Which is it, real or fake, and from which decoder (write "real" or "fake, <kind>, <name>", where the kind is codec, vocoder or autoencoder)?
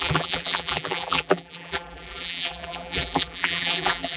fake, vocoder, BigVGAN v2